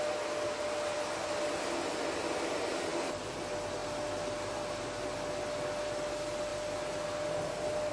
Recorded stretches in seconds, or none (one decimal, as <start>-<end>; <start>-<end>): 0.0-7.9

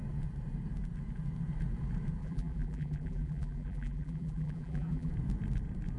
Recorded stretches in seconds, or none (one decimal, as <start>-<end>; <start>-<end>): 0.0-2.2; 5.1-6.0

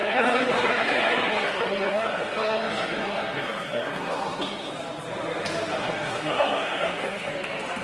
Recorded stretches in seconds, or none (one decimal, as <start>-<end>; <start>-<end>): 4.7-5.8; 7.3-7.8

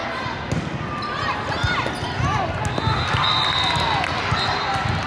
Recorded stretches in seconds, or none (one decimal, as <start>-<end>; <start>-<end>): 0.0-5.1

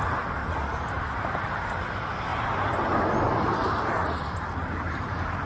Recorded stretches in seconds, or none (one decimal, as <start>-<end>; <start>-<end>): 2.3-4.1

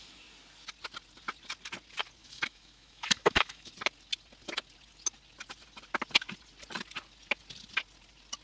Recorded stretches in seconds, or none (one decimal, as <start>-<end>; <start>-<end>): 0.0-2.2; 3.7-8.4

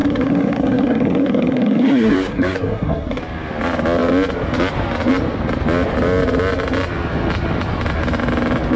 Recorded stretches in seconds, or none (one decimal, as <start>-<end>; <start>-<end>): 3.2-8.8

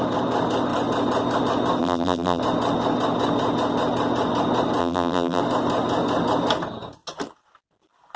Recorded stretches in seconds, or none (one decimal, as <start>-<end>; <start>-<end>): 0.0-1.8; 2.4-4.8; 5.4-8.2